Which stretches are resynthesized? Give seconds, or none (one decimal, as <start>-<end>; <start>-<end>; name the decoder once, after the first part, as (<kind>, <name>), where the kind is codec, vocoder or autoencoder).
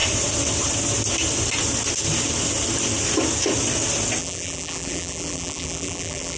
4.2-6.4 (vocoder, BigVGAN v2)